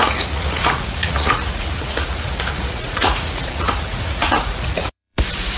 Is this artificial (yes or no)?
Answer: yes